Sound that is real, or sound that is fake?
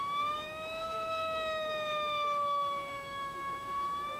fake